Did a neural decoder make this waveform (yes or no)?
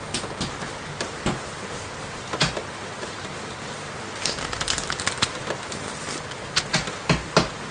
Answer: no